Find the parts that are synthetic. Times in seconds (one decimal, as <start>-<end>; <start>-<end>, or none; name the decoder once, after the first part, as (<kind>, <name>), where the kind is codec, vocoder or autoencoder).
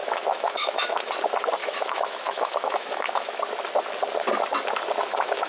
0.0-1.1 (autoencoder, DAC-VAE); 1.6-3.4; 5.0-5.5